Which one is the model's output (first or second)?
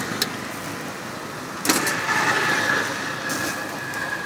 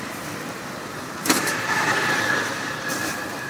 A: second